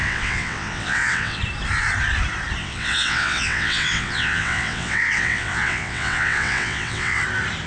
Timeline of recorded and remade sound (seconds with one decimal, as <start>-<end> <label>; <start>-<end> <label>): 0.0-1.4 remade; 1.4-2.6 recorded; 2.6-7.2 remade; 7.2-7.7 recorded